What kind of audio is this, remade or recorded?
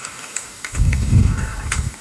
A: remade